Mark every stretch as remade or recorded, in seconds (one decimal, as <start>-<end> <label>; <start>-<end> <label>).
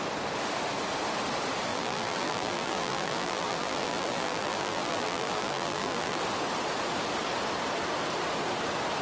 0.0-1.7 recorded; 1.7-6.2 remade; 6.2-9.0 recorded